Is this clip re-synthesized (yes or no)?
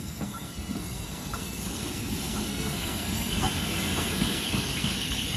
yes